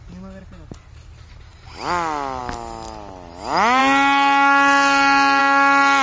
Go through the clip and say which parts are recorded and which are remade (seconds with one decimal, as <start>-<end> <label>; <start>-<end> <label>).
0.0-6.0 recorded